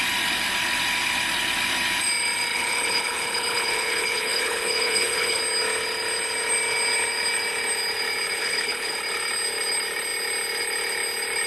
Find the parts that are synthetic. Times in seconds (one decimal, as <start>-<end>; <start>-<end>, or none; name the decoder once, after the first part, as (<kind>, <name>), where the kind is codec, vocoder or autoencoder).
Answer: 2.5-5.4 (codec, HILCodec); 8.4-8.9